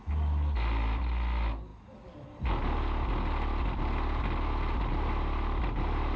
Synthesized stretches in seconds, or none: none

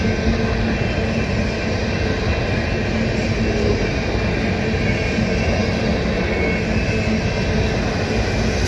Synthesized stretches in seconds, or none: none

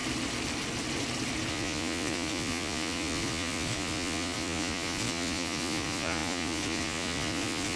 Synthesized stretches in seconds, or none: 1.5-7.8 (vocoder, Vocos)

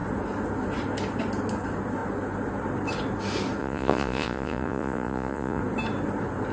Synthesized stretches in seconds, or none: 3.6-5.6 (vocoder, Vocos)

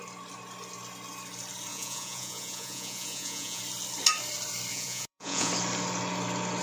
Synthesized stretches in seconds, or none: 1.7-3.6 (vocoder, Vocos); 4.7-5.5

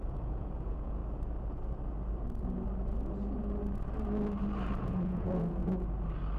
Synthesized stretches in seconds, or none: 0.0-1.0 (vocoder, Vocos); 4.8-5.6

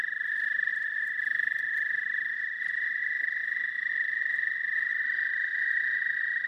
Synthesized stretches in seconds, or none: none